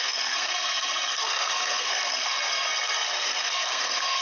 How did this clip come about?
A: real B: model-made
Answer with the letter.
B